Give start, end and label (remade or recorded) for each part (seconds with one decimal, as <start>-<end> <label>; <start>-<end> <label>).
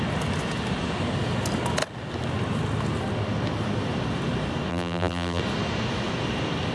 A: 0.0-4.7 recorded; 4.7-5.4 remade; 5.4-6.7 recorded